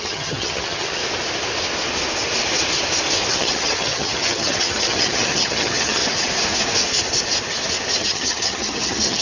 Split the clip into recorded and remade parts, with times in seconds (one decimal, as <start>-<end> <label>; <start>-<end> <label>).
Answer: 0.0-1.0 remade; 1.0-3.3 recorded; 3.3-6.0 remade; 6.0-8.0 recorded; 8.0-9.2 remade